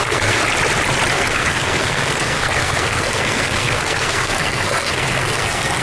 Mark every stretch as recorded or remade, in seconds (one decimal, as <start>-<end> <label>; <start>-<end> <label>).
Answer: 0.0-0.4 remade; 0.4-1.1 recorded; 1.1-5.8 remade